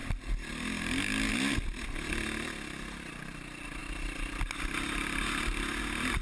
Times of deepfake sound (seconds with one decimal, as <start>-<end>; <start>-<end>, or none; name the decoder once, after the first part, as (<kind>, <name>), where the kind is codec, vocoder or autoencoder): none